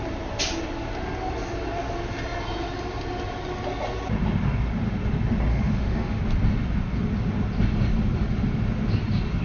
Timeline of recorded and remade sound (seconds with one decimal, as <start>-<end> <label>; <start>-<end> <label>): 0.0-5.5 recorded; 5.5-6.2 remade; 6.2-9.4 recorded